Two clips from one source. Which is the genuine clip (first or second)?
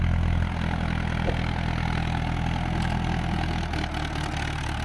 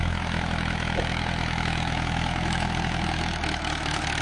first